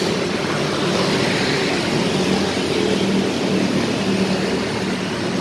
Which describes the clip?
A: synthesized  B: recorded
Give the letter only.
B